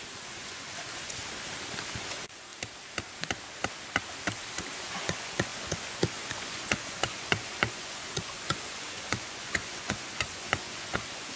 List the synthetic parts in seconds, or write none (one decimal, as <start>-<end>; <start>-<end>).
0.0-1.2; 1.9-2.5; 4.7-11.4